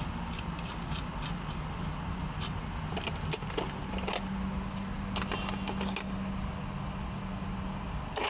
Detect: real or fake real